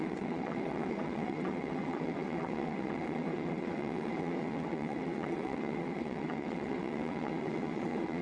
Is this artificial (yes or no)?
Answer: yes